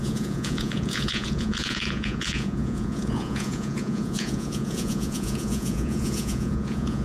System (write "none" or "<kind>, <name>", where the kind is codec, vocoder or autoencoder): vocoder, Vocos